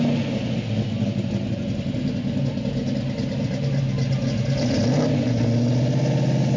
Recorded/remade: recorded